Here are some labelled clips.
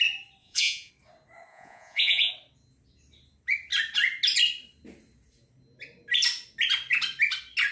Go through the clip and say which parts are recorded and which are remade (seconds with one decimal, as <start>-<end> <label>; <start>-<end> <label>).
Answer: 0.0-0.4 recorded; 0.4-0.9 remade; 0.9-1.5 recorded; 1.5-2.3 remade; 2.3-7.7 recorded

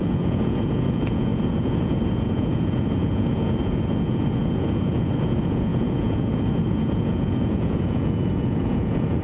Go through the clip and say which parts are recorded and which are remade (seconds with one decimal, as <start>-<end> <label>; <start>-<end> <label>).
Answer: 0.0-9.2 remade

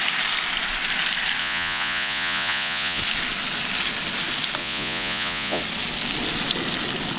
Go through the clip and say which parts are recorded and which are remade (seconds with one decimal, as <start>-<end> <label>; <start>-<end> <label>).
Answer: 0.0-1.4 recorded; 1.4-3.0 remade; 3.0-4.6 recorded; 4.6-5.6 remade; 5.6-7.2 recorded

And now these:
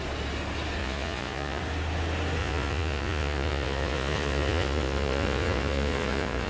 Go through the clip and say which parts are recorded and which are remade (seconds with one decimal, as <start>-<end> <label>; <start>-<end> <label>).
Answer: 0.0-0.8 recorded; 0.8-1.6 remade; 1.6-2.4 recorded; 2.4-6.5 remade